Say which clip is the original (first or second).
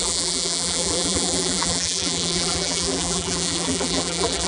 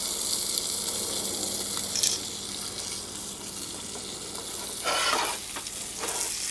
second